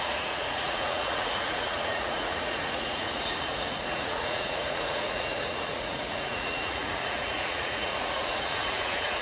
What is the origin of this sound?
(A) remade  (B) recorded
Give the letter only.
A